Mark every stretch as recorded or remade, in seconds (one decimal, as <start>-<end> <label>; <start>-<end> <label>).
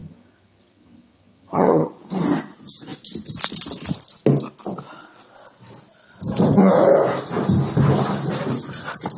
0.0-1.9 remade; 1.9-9.2 recorded